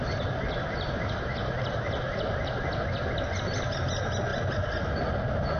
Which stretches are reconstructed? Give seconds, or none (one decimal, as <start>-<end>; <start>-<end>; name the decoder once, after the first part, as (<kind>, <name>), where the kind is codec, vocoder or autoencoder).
none